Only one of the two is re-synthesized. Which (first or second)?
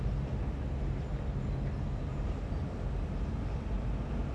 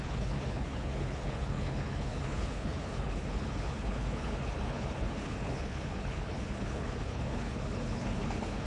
second